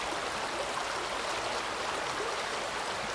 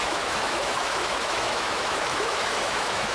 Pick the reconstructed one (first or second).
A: second